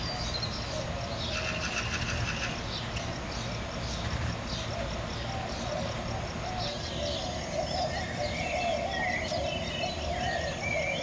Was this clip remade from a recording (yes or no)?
no